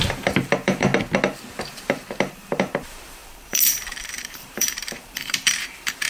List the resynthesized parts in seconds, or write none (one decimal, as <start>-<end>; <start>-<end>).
0.0-0.9; 1.6-6.1